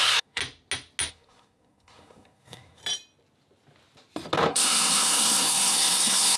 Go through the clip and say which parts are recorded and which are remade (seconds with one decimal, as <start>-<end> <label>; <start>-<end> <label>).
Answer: 0.0-0.4 remade; 0.4-1.1 recorded; 1.1-2.8 remade; 2.8-4.5 recorded; 4.5-6.4 remade